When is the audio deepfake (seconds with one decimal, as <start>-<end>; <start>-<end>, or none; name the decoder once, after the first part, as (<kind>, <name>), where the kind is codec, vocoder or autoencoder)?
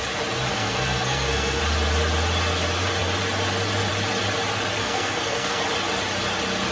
0.5-1.6 (codec, SNAC); 4.8-5.6